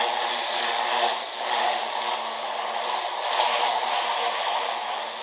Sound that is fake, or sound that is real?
real